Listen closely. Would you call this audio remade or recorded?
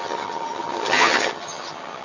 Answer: remade